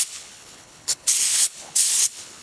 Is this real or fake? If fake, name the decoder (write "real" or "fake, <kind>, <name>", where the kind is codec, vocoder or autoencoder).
fake, codec, HILCodec